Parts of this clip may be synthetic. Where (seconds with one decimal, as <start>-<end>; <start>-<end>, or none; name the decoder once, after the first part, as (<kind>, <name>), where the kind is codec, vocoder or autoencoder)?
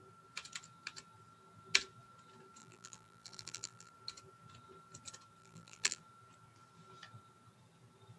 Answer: 2.6-3.9 (vocoder, BigVGAN v2); 5.4-6.0